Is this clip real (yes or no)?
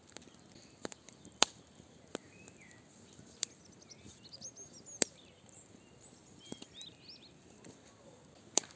yes